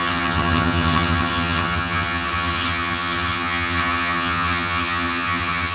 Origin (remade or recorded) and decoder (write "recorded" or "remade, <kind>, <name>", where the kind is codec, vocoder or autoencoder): remade, vocoder, HiFi-GAN